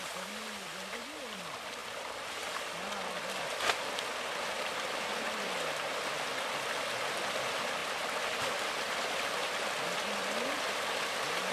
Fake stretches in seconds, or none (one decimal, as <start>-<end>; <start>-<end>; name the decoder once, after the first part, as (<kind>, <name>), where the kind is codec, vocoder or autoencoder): none